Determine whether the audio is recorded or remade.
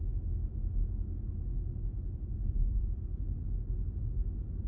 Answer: recorded